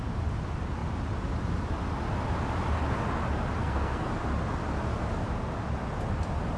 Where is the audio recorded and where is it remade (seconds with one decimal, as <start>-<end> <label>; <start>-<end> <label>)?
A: 0.0-3.6 recorded; 3.6-4.1 remade; 4.1-6.6 recorded